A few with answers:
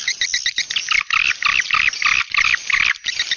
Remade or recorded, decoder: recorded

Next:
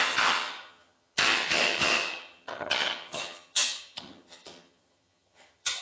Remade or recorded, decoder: remade, vocoder, HiFi-GAN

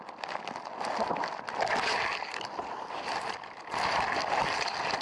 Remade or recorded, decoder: recorded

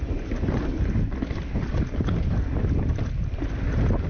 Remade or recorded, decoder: recorded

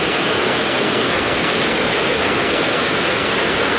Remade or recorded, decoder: remade, codec, SNAC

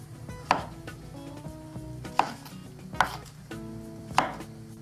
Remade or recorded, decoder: recorded